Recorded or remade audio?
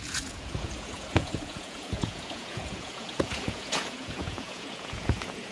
remade